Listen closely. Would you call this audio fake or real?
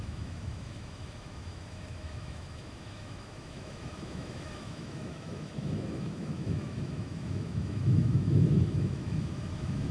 fake